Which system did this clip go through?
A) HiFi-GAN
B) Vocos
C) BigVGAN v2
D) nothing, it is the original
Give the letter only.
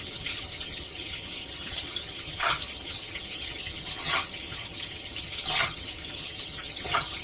A